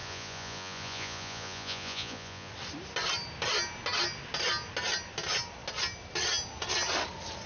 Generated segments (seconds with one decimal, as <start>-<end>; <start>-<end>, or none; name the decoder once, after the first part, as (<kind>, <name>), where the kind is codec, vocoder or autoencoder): 0.0-2.5 (vocoder, Vocos)